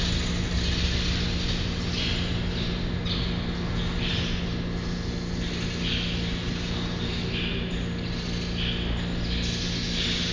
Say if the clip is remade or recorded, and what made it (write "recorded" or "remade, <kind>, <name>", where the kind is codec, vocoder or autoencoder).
recorded